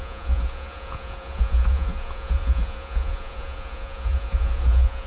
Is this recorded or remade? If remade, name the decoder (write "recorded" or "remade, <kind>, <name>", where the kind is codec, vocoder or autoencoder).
remade, vocoder, Vocos